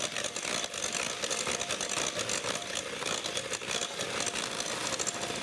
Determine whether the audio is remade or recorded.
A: recorded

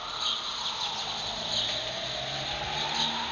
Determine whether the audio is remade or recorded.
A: recorded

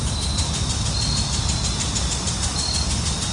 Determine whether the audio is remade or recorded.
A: recorded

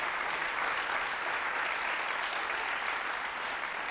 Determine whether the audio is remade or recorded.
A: recorded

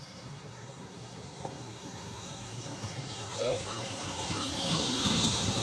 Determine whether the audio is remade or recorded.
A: remade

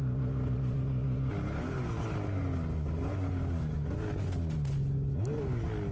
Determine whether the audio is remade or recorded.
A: recorded